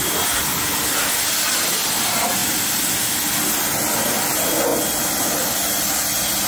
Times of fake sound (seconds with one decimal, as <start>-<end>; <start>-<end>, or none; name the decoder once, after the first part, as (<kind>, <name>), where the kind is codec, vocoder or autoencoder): none